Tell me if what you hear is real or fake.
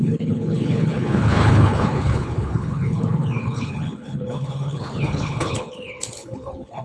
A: fake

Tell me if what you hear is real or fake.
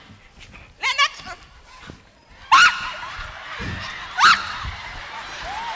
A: real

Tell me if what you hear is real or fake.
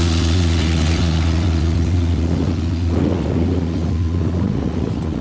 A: fake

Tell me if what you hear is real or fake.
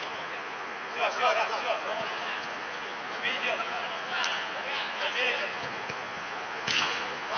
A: fake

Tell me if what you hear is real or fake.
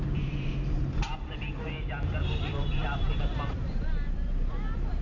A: fake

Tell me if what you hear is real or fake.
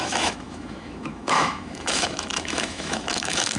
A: fake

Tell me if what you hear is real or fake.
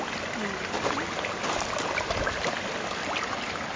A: real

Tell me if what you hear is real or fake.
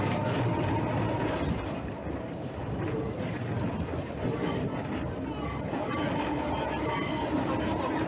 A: real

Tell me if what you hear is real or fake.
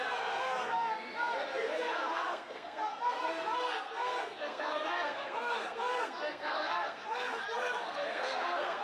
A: fake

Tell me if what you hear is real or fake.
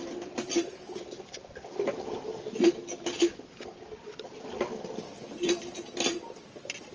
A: real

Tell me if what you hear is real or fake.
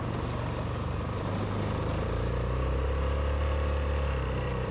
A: fake